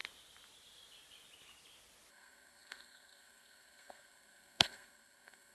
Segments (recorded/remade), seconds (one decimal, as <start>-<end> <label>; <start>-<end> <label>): 0.0-2.1 recorded; 2.1-5.5 remade